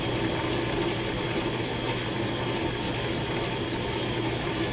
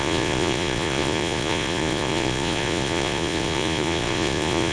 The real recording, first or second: first